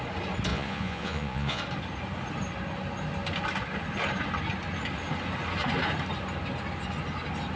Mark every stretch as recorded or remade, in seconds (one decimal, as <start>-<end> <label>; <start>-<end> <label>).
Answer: 0.0-0.5 recorded; 0.5-1.6 remade; 1.6-7.6 recorded